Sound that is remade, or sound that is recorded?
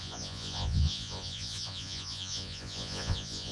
remade